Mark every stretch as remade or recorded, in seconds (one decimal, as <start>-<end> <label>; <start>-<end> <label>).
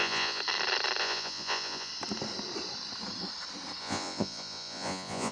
0.0-0.4 remade; 0.4-1.0 recorded; 1.0-1.9 remade; 1.9-3.8 recorded; 3.8-5.3 remade